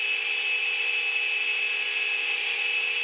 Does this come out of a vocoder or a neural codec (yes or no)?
no